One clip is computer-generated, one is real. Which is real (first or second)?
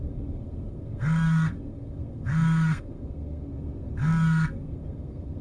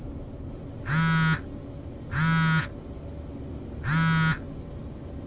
second